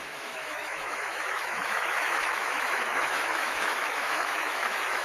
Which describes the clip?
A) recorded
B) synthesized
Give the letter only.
B